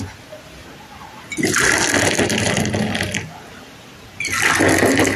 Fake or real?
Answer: real